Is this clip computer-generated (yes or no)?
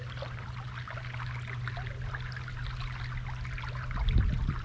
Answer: no